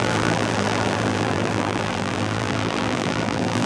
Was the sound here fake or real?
fake